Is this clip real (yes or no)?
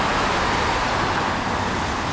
no